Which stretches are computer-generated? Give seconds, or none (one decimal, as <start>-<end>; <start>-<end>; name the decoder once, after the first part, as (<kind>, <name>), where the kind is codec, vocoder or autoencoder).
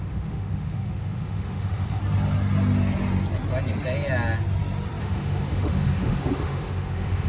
0.0-2.0 (autoencoder, DAC-VAE); 5.0-7.3